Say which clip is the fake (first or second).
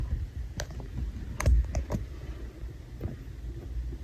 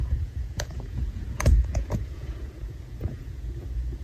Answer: second